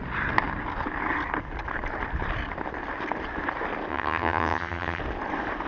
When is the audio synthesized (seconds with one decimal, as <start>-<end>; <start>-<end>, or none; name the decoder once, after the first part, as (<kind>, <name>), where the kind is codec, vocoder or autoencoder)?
3.9-5.0 (vocoder, HiFi-GAN)

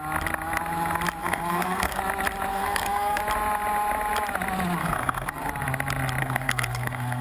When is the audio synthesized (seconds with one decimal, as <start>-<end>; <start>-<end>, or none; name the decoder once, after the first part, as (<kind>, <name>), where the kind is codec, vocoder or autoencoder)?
1.2-2.0 (codec, SNAC); 2.5-3.2; 4.8-5.5; 6.2-7.2

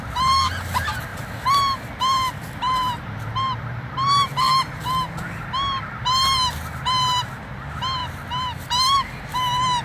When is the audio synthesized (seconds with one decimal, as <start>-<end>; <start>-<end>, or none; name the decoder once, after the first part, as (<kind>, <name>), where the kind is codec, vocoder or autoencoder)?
none

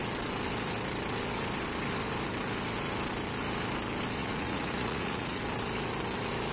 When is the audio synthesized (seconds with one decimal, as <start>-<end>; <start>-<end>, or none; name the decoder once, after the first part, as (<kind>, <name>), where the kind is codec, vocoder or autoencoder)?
4.2-5.4 (vocoder, Vocos)